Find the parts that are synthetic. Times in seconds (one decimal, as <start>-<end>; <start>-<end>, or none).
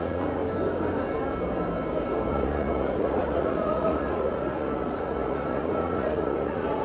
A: 0.0-0.4; 2.3-6.8